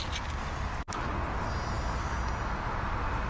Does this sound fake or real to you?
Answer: real